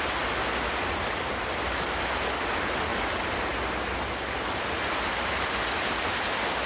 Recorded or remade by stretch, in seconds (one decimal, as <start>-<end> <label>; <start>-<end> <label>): 0.0-6.7 recorded